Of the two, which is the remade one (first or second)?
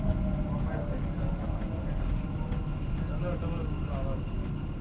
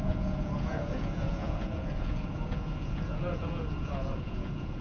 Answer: second